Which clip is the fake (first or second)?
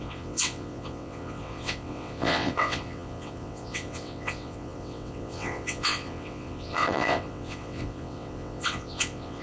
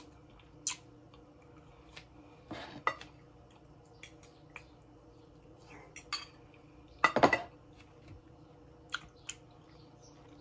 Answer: first